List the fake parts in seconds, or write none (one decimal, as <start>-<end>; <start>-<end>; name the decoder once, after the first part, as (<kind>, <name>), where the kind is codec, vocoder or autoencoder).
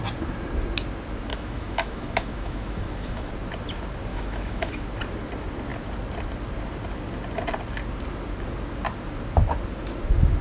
1.3-3.3 (autoencoder, DAC-VAE); 4.1-4.8